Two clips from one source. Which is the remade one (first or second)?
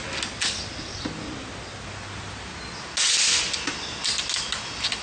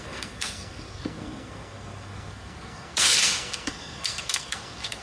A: second